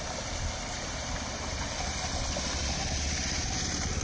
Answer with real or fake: real